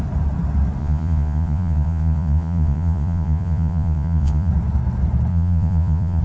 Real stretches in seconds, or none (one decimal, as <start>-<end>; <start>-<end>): 0.0-0.8; 4.5-5.3